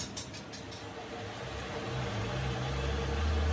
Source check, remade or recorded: recorded